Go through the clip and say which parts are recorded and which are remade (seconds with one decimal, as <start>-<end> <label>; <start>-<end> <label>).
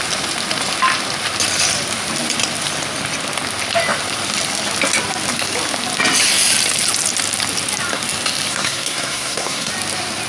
0.0-8.5 recorded; 8.5-9.7 remade; 9.7-10.3 recorded